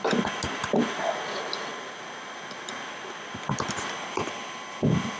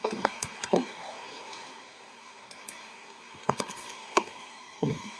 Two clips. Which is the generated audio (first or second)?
second